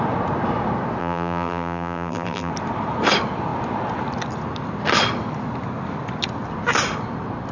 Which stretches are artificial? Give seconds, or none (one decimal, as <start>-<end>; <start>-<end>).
1.0-2.5